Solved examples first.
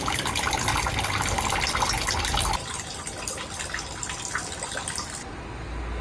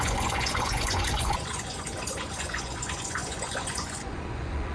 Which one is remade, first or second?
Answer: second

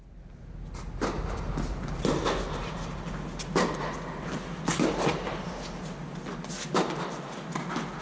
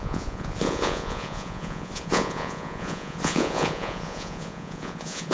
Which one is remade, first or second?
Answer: second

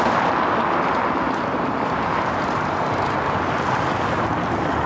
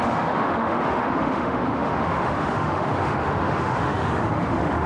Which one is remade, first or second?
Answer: second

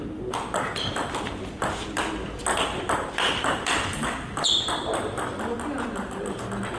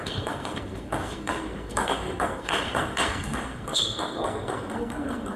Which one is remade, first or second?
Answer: second